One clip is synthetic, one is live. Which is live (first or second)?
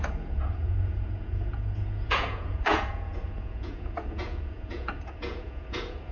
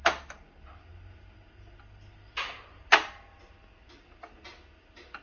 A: second